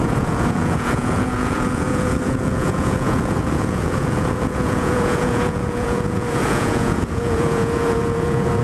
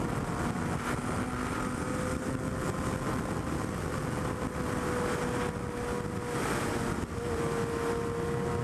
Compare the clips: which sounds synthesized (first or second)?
first